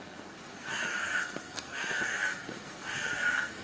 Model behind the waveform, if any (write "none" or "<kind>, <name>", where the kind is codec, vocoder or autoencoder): codec, SNAC